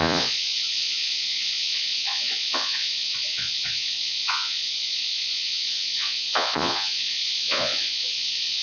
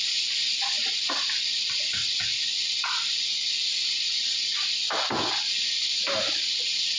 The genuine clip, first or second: second